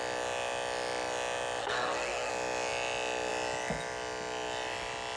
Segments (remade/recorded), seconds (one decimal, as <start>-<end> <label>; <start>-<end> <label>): 0.0-1.6 recorded; 1.6-2.3 remade; 2.3-5.2 recorded